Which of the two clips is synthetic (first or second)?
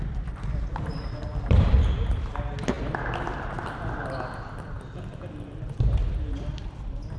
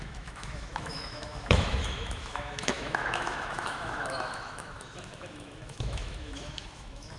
second